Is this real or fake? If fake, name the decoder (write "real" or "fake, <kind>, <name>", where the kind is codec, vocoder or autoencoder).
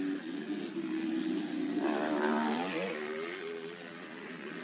real